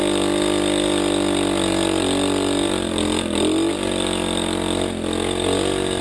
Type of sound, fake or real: real